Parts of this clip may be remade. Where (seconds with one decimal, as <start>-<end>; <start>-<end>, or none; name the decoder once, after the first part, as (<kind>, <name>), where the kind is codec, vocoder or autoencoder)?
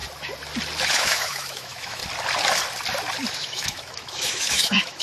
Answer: 0.9-2.0 (autoencoder, DAC-VAE); 3.3-5.0